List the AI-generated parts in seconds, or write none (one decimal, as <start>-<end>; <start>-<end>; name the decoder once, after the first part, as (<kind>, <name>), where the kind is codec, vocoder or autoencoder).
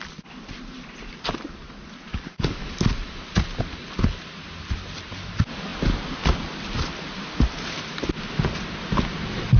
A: 2.1-2.7 (codec, DAC)